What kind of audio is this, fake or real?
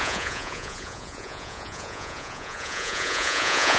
fake